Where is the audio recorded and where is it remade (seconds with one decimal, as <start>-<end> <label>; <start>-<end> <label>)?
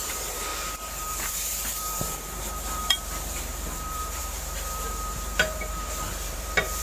0.0-6.8 remade